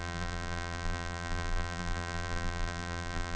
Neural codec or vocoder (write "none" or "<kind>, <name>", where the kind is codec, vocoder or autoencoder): vocoder, BigVGAN v2